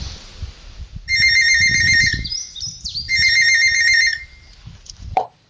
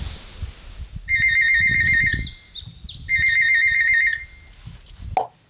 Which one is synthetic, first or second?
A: first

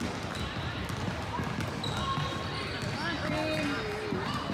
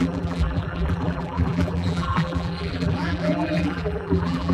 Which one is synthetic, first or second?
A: second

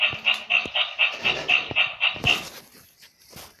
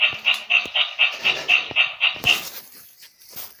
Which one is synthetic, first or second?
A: first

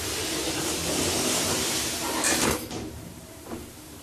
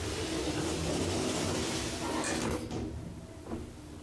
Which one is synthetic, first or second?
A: first